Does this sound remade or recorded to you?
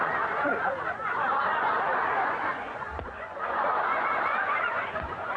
remade